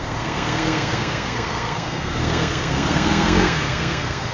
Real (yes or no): no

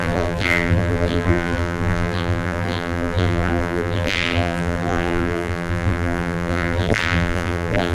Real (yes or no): no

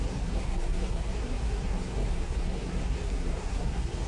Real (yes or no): no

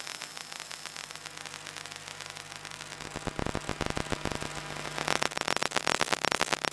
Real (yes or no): yes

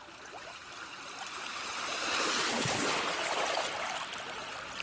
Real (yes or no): yes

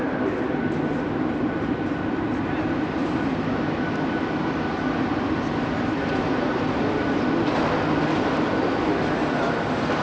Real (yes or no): yes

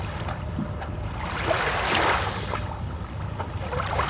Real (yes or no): yes